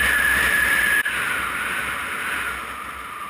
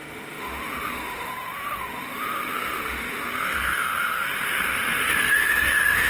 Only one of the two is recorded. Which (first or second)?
first